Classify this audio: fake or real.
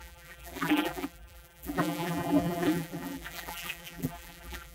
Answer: fake